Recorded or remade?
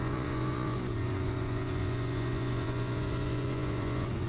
remade